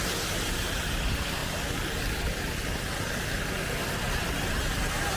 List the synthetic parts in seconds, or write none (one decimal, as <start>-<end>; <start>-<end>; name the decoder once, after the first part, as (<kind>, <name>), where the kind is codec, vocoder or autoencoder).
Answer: 0.0-1.4 (vocoder, BigVGAN v2); 4.5-5.2